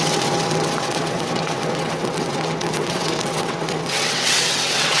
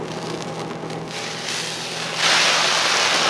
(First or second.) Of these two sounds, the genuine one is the second